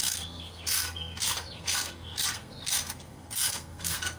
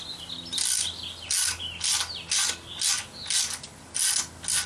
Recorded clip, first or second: second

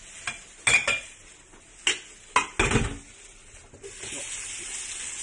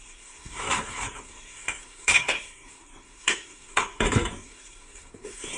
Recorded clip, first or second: first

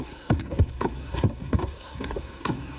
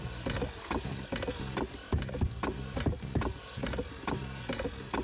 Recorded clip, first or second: second